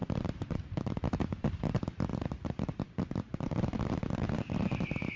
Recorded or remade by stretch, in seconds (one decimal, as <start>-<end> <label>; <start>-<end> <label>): 0.0-0.9 remade; 0.9-2.1 recorded; 2.1-5.2 remade